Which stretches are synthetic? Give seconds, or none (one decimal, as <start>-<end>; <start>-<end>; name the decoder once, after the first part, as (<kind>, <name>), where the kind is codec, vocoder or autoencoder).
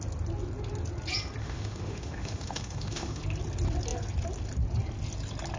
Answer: 1.4-3.2 (autoencoder, DAC-VAE)